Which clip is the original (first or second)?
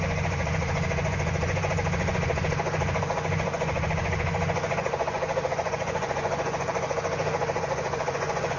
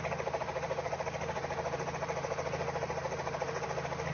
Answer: second